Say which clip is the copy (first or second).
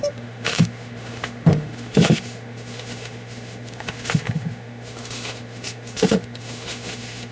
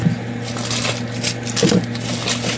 first